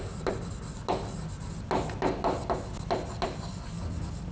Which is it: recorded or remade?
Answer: recorded